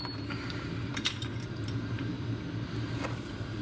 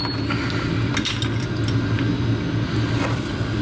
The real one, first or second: second